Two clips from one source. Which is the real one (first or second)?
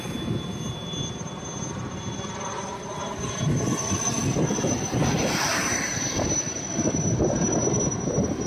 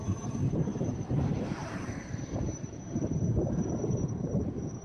first